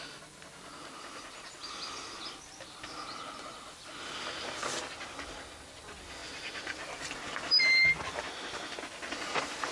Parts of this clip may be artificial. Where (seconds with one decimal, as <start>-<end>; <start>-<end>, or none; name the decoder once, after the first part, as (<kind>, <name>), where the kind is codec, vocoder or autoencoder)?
none